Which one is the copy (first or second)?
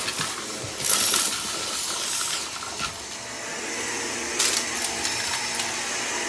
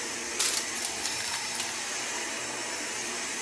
second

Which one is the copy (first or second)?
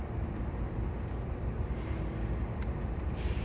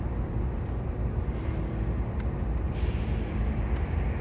first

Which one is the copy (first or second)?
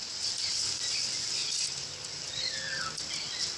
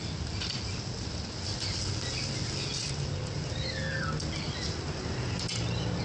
first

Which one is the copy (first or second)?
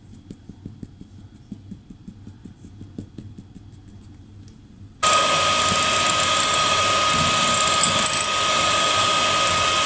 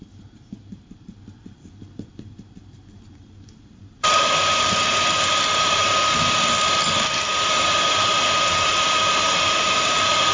second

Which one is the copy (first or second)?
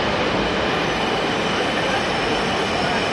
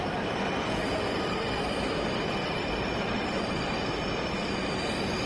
second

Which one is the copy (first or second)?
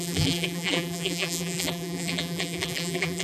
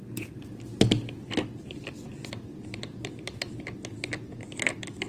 first